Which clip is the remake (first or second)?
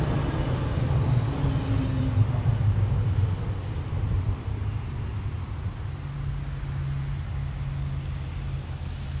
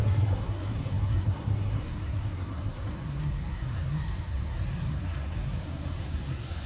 second